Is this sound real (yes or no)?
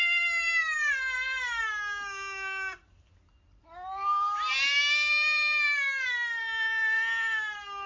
yes